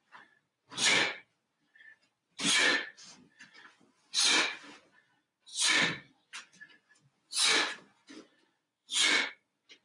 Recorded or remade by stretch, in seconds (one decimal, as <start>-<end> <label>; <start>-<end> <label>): 0.0-2.6 recorded; 2.6-4.2 remade; 4.2-5.5 recorded; 5.5-9.3 remade; 9.3-9.8 recorded